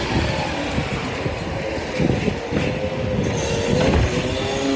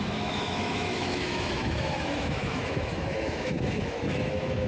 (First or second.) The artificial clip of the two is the second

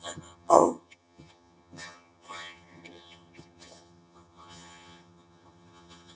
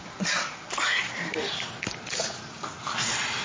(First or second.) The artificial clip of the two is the first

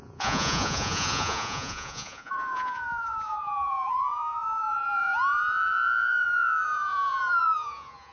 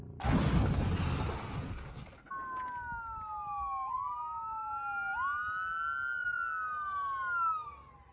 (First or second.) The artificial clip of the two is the first